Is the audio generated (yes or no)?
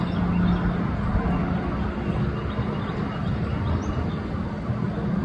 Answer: no